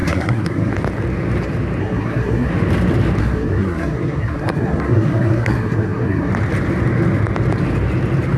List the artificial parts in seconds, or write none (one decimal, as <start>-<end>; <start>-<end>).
0.0-0.7; 1.8-2.5; 3.2-6.3